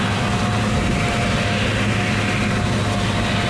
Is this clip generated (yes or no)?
no